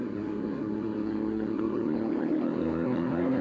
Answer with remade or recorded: remade